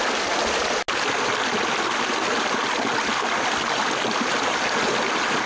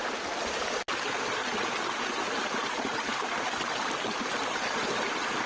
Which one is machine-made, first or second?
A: second